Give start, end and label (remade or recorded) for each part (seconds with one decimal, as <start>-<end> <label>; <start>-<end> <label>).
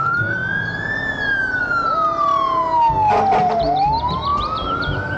0.0-0.4 remade; 0.4-3.5 recorded; 3.5-5.2 remade